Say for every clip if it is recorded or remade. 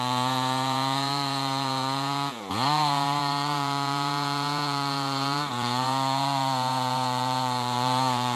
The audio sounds remade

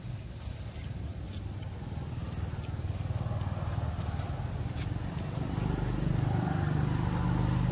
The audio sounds recorded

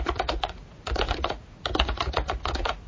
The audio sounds remade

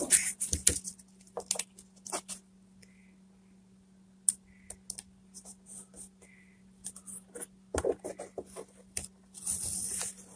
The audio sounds recorded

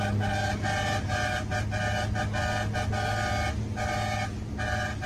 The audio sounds recorded